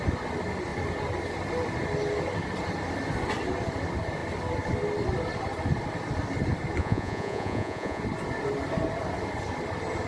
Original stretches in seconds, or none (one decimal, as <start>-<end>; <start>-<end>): 0.0-6.8; 8.0-10.1